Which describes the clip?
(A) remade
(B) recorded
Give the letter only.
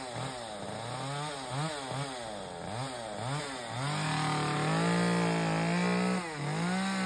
B